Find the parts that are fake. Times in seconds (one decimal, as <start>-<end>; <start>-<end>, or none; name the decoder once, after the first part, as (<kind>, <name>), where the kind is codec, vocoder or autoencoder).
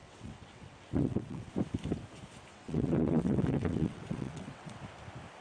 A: 0.0-1.5 (vocoder, WaveNeXt); 2.5-4.8